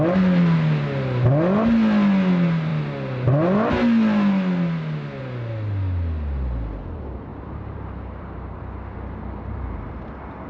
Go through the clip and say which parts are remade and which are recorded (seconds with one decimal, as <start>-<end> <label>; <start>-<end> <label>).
0.0-7.3 recorded; 7.3-8.6 remade; 8.6-10.5 recorded